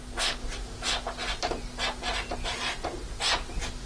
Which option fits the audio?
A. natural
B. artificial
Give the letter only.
A